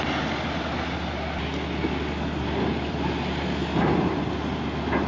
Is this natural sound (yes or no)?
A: yes